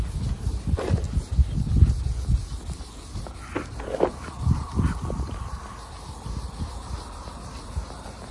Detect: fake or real real